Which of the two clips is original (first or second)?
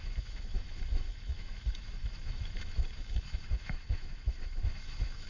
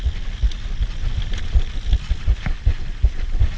second